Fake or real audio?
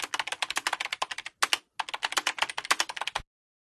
real